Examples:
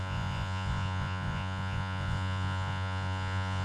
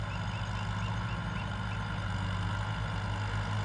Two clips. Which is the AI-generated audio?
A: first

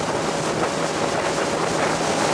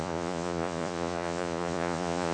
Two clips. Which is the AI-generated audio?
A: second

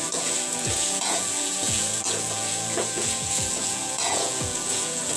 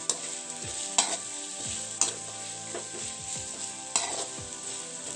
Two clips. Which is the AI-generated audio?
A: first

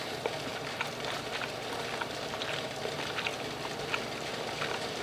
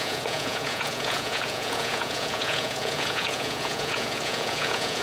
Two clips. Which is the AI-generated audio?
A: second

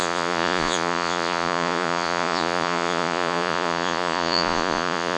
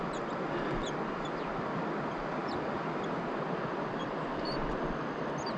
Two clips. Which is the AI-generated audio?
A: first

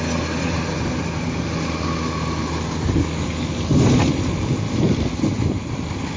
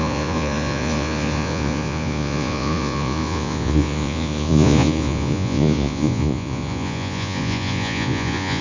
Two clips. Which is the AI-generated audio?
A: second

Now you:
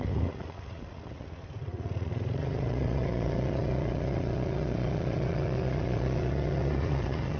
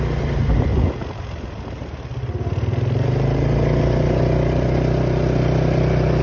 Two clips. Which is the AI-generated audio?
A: first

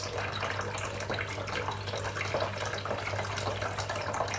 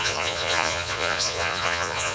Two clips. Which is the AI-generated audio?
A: second